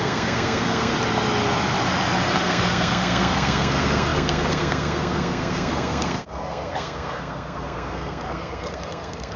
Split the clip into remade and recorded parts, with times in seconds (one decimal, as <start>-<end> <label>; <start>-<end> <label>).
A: 0.0-0.9 remade; 0.9-2.4 recorded; 2.4-9.4 remade